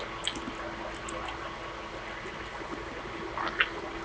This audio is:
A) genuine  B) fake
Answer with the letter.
A